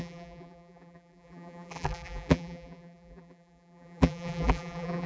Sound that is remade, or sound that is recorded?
remade